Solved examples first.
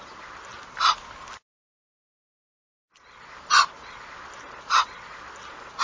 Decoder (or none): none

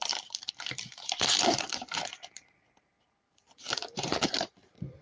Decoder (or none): vocoder, BigVGAN v2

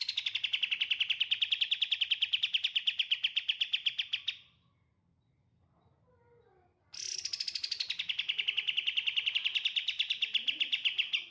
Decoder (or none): none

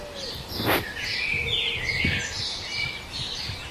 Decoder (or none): none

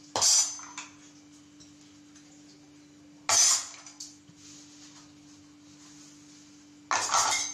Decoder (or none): none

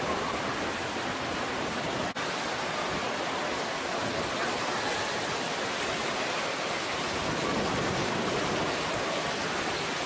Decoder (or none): none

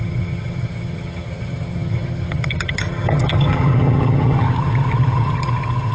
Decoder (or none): vocoder, HiFi-GAN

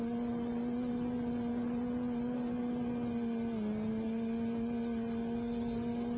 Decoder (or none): none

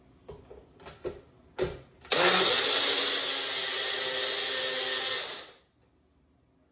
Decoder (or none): none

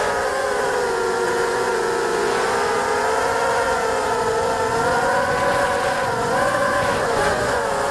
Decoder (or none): vocoder, Vocos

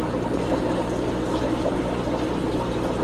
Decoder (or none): none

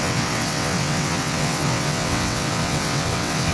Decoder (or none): vocoder, WaveNeXt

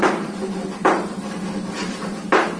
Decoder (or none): none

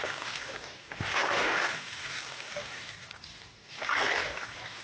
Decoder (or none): codec, DAC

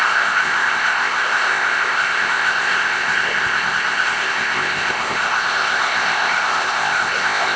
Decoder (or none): codec, ZipCodec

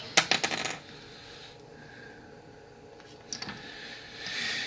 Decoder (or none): none